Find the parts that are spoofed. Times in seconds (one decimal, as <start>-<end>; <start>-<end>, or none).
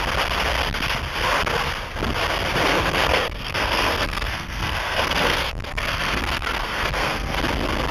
2.7-7.4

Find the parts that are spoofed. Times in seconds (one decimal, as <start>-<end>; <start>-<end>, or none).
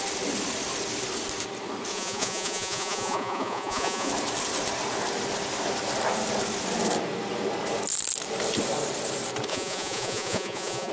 1.9-4.1; 9.5-10.9